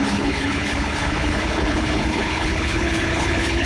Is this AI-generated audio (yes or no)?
yes